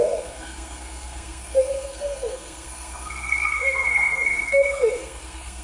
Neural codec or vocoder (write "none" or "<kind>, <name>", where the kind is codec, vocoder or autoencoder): codec, SNAC